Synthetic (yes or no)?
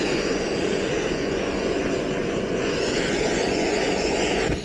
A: yes